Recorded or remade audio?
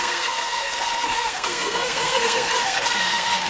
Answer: remade